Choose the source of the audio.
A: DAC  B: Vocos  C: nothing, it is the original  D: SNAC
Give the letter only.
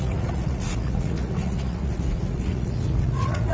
B